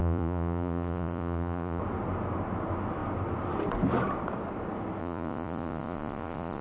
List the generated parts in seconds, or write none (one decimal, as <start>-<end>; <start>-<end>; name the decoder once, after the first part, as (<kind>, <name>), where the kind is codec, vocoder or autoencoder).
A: 0.0-1.8 (vocoder, Vocos); 5.0-6.6